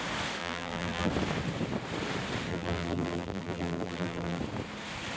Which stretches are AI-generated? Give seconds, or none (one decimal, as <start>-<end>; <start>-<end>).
0.4-1.1; 2.5-4.4